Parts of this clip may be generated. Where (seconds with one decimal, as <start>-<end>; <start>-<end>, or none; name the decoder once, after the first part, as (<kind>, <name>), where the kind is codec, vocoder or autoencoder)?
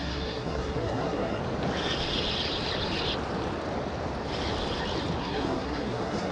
0.0-1.4 (codec, SNAC); 5.2-6.3